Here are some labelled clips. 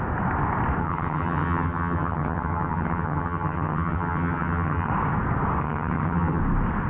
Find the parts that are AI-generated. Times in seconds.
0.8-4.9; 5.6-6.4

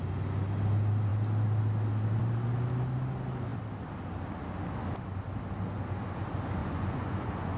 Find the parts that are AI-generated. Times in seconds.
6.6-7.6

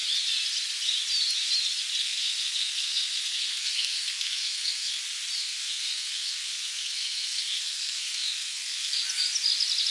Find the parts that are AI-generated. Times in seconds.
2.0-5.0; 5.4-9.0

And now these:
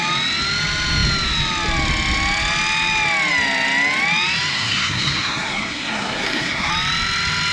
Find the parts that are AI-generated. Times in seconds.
4.5-6.7

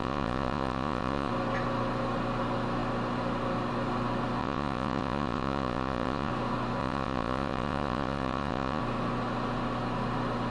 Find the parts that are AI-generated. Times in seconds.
0.0-1.3; 4.4-6.3; 6.8-8.8